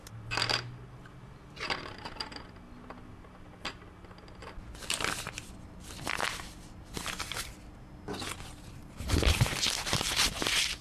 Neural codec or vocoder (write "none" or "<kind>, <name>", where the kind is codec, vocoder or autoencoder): none